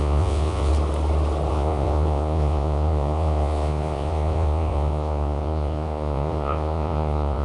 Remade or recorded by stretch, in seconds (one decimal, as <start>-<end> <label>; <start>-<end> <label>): 0.0-0.7 remade; 0.7-1.5 recorded; 1.5-7.4 remade